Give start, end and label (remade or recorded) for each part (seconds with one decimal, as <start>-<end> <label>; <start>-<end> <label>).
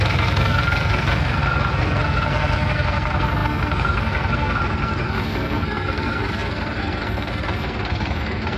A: 0.0-8.6 remade